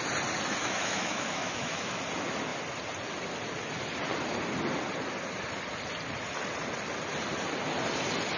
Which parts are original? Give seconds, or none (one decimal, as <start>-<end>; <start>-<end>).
0.0-0.6; 2.0-8.4